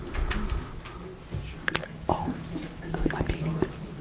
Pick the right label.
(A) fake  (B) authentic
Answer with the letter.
B